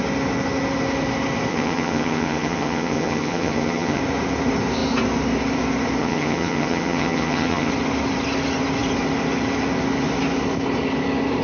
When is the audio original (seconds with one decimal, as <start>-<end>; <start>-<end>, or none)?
0.0-1.5; 4.0-6.0; 7.7-11.4

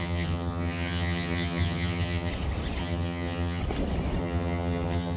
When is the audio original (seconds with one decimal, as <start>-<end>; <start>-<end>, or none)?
2.3-2.8; 3.6-4.2

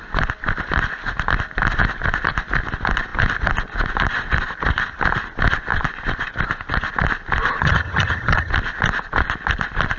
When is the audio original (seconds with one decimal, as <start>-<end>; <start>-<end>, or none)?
0.0-7.6; 8.5-10.0

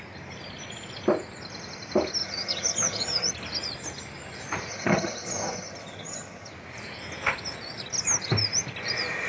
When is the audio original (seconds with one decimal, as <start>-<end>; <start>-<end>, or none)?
0.0-2.2; 3.3-4.7; 6.5-9.3